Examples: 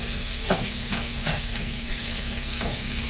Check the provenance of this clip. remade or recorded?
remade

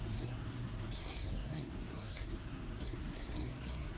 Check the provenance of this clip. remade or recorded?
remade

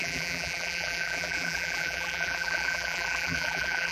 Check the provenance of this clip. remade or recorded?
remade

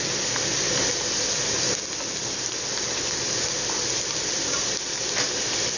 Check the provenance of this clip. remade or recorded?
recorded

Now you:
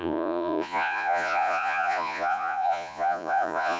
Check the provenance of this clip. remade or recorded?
remade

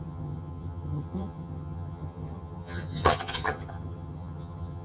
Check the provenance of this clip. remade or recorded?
remade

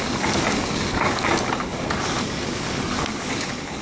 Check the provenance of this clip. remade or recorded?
remade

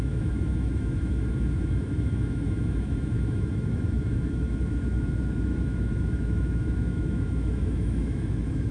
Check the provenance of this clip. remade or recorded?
remade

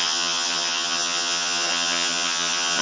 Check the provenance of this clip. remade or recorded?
remade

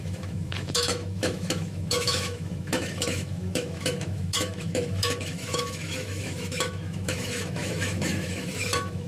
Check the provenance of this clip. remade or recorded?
remade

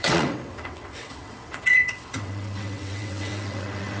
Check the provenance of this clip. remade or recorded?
remade